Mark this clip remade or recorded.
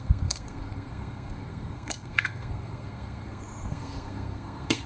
remade